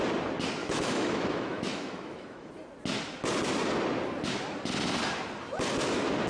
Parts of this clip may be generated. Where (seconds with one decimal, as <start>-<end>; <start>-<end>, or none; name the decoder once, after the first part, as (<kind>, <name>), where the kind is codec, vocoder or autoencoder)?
0.6-2.5 (autoencoder, DAC-VAE)